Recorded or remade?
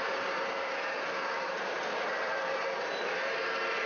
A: remade